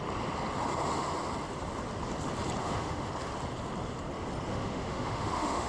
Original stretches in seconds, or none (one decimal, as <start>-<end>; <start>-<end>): 0.0-2.6; 3.1-4.5